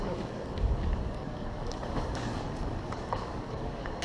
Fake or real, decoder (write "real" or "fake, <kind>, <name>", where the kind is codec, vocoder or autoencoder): fake, codec, DAC